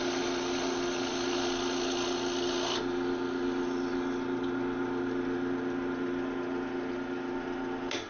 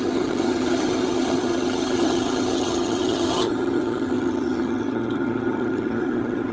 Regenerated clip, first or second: second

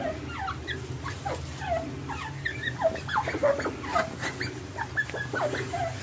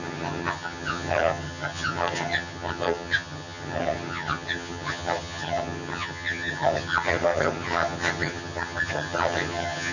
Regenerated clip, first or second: second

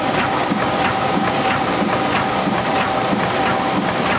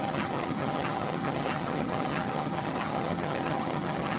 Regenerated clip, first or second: second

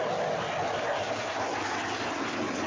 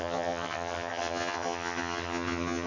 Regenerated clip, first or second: second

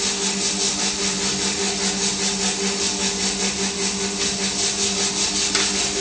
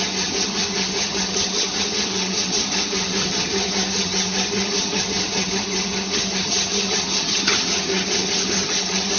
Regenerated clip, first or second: second